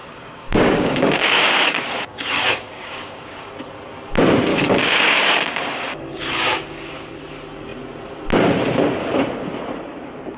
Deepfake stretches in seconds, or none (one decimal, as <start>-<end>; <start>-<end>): 0.0-3.5; 4.5-6.9